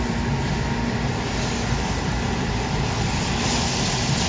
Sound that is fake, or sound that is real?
real